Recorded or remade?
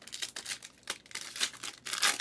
recorded